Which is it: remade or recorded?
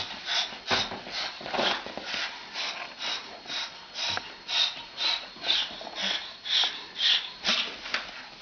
recorded